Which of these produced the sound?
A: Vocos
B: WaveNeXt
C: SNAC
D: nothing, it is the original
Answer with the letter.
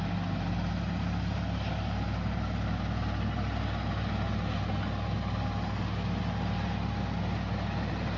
D